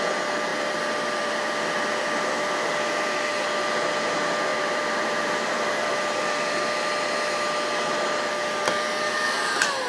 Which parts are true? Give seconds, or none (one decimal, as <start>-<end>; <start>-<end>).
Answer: 0.0-0.5; 3.3-4.5; 6.7-9.9